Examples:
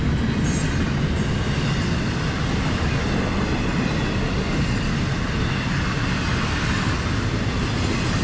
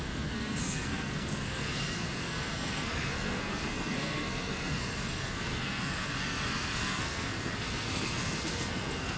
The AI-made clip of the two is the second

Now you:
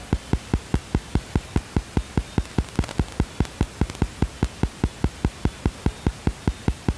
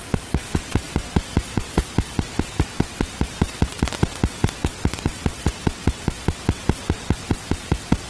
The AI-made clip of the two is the second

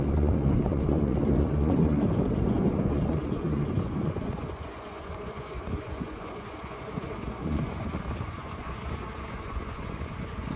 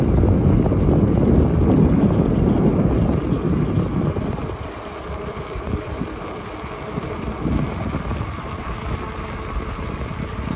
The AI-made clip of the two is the first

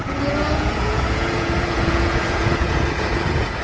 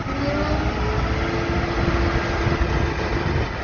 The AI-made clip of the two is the first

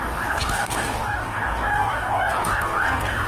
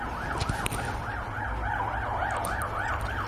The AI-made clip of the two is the first